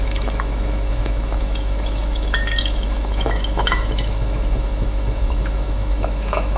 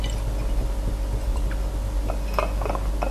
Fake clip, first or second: first